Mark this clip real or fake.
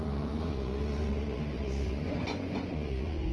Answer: fake